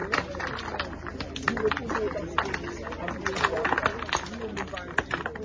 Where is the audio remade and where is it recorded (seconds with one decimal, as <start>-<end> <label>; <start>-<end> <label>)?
0.0-5.4 recorded